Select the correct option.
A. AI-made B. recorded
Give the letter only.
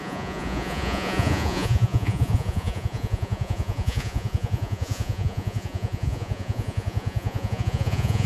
A